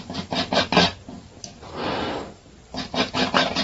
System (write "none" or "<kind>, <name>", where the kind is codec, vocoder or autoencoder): none